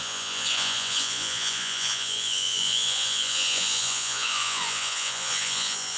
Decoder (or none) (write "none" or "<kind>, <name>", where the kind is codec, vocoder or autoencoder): vocoder, Vocos